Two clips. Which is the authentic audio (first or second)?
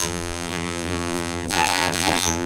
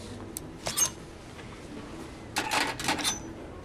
second